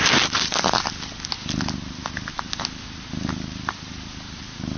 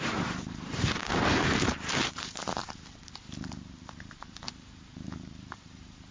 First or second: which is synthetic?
second